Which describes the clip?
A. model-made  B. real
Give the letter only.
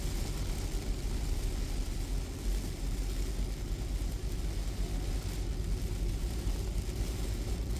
B